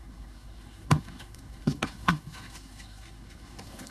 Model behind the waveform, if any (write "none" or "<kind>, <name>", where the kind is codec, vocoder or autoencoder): codec, SNAC